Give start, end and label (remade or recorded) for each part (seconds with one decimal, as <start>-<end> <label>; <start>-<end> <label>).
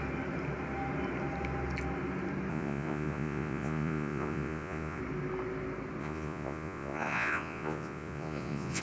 0.0-2.5 recorded; 2.5-5.0 remade; 5.0-6.0 recorded; 6.0-8.8 remade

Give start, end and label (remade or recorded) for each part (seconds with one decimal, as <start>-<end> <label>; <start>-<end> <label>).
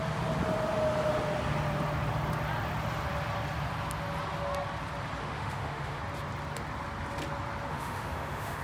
0.0-5.2 recorded; 5.2-6.0 remade; 6.0-7.7 recorded; 7.7-8.6 remade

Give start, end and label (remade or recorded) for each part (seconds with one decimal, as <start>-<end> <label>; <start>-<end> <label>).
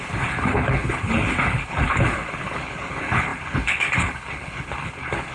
0.0-5.3 remade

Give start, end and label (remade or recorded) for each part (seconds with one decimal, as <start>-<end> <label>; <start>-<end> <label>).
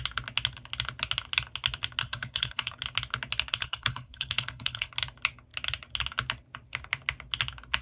0.0-2.0 recorded; 2.0-2.7 remade; 2.7-3.5 recorded; 3.5-4.9 remade; 4.9-7.8 recorded